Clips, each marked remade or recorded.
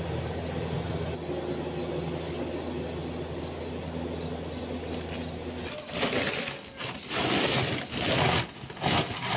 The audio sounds recorded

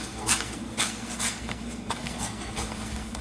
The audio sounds remade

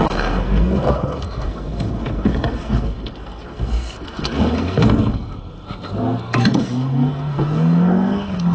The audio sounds remade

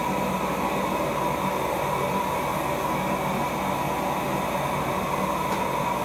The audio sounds recorded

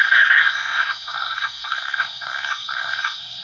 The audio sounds remade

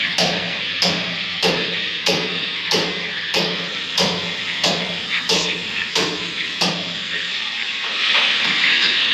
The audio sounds remade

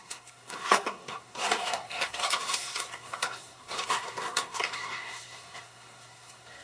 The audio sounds remade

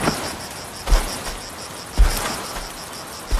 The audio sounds recorded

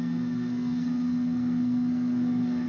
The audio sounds remade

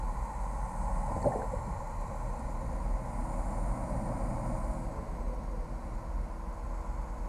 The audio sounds recorded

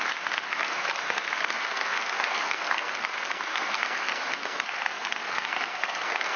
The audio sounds remade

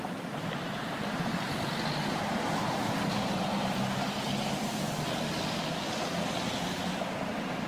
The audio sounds recorded